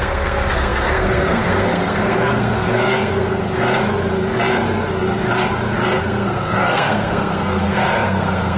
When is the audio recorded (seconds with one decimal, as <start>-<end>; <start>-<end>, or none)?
3.4-6.0